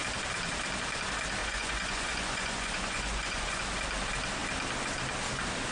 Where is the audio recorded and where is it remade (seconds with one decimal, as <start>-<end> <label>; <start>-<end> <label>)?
0.0-1.4 recorded; 1.4-3.6 remade; 3.6-5.7 recorded